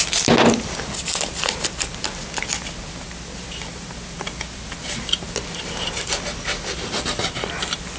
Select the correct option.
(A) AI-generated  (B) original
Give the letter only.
B